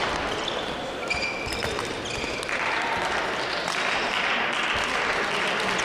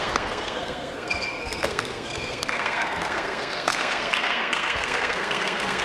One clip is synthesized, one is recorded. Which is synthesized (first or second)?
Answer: second